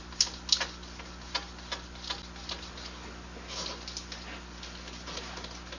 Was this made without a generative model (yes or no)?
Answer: yes